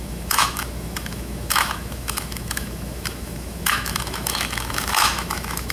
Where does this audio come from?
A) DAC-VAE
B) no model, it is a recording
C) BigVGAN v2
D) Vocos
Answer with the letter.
A